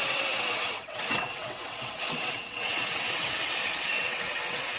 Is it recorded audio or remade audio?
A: remade